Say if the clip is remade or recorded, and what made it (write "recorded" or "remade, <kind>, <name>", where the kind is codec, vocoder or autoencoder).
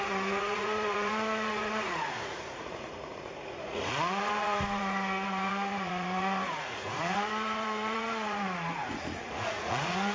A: remade, vocoder, Vocos